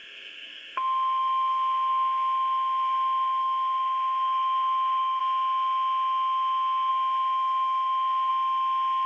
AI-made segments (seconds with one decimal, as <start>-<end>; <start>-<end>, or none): 0.0-5.2; 6.9-8.3